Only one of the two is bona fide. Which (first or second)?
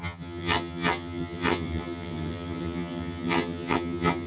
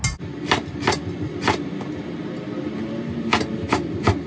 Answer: second